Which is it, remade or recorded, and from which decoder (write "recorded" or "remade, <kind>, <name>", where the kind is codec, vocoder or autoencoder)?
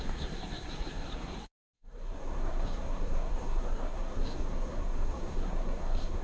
remade, codec, SNAC